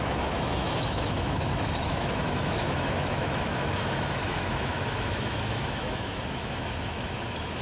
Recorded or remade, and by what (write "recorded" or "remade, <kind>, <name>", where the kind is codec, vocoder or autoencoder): remade, autoencoder, DAC-VAE